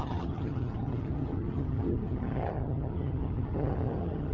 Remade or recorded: remade